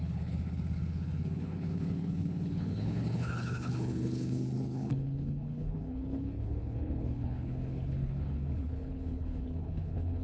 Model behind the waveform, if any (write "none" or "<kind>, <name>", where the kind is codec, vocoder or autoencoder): codec, HILCodec